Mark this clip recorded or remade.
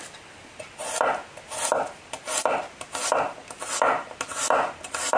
recorded